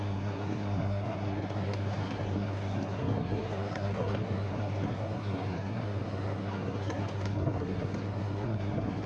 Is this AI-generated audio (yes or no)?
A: yes